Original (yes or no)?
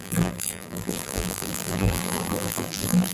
no